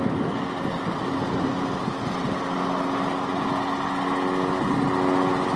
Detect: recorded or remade recorded